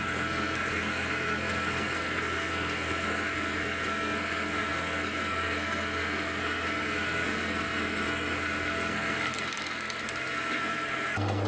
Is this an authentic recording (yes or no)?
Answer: no